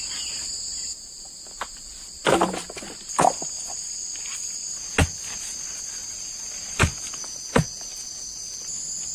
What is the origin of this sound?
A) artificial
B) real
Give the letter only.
B